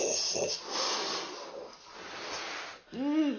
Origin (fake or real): real